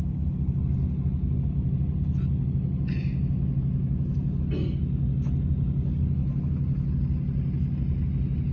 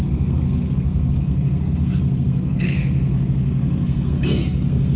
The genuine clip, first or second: first